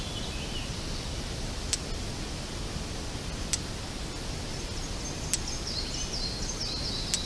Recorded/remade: recorded